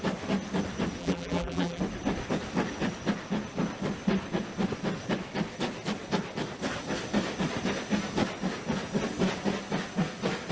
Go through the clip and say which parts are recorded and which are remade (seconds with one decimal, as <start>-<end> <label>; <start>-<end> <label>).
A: 0.0-1.0 recorded; 1.0-1.8 remade; 1.8-10.5 recorded